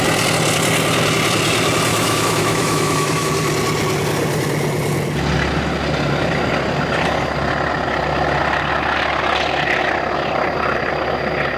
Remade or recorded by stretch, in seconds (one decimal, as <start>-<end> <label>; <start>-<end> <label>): 0.0-1.9 recorded; 1.9-3.3 remade; 3.3-11.6 recorded